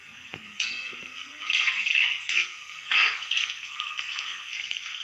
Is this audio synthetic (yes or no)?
yes